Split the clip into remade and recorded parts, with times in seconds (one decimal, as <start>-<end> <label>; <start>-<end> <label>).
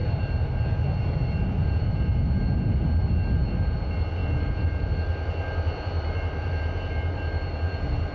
0.0-8.1 recorded